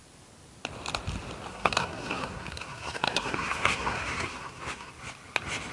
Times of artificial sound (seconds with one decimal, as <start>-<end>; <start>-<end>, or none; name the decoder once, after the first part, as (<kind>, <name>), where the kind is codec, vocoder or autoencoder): 1.5-4.9 (codec, SNAC)